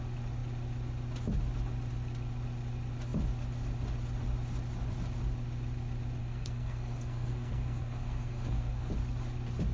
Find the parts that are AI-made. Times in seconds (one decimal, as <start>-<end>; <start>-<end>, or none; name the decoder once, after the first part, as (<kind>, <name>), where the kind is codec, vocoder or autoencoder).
6.2-8.9 (codec, SNAC)